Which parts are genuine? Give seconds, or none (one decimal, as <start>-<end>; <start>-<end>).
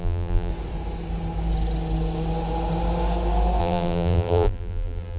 0.5-3.6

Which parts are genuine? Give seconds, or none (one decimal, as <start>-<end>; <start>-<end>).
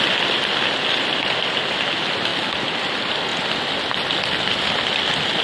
0.0-5.4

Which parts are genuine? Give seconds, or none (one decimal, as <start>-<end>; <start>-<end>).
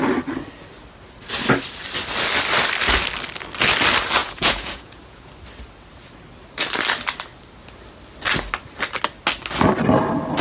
0.0-4.2; 5.3-10.4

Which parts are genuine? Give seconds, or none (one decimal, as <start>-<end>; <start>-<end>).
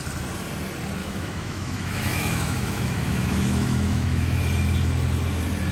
0.0-1.0; 4.4-5.7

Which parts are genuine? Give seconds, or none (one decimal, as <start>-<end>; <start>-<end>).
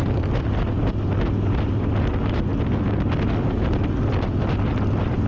0.0-5.3